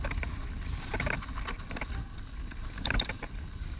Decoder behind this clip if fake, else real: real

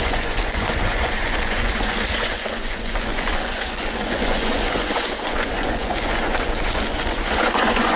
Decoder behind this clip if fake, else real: fake, vocoder, Vocos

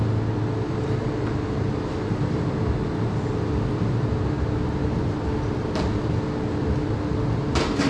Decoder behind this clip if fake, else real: real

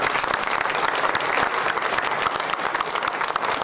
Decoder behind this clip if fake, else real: real